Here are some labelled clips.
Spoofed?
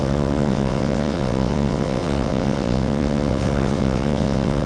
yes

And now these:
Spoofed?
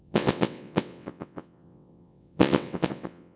yes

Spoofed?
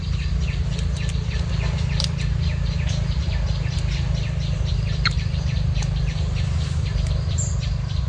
no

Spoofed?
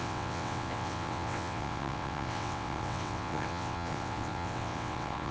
yes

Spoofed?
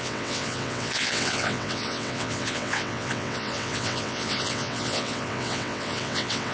yes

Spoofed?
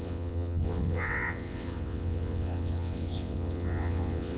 yes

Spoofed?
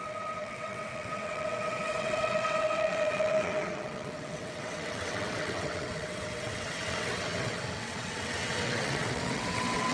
yes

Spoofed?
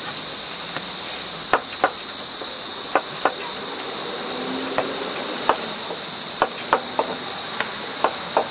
no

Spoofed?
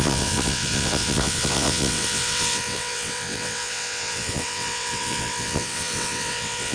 yes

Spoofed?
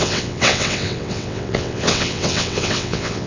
yes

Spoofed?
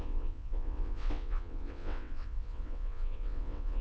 yes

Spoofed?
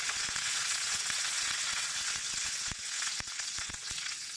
yes